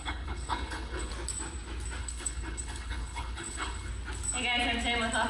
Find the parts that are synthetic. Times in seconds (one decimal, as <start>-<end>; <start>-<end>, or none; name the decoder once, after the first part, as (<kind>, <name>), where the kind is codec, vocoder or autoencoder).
0.0-1.1 (codec, HILCodec); 2.0-3.9